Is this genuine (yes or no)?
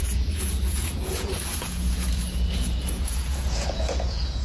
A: no